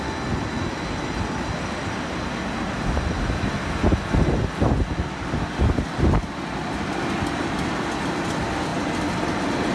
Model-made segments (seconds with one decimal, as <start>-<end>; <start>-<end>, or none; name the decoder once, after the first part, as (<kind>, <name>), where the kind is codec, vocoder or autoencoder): none